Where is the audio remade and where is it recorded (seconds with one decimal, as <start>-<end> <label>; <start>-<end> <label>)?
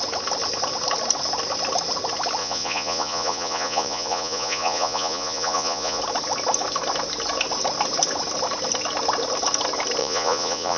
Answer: 0.0-2.4 recorded; 2.4-6.0 remade; 6.0-10.0 recorded; 10.0-10.8 remade